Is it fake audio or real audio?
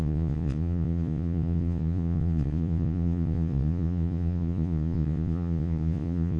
fake